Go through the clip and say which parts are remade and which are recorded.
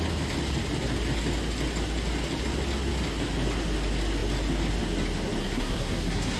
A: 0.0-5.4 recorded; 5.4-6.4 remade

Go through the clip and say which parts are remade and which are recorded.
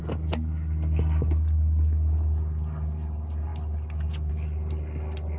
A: 0.0-5.4 recorded